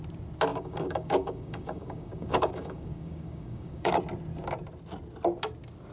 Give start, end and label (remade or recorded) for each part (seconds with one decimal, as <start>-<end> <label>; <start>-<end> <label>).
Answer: 0.0-0.5 recorded; 0.5-4.0 remade; 4.0-5.9 recorded